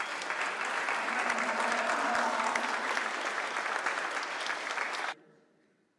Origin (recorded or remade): recorded